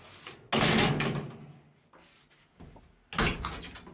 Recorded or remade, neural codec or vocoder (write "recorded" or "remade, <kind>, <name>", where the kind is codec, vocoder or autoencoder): recorded